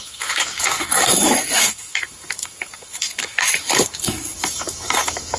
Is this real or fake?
fake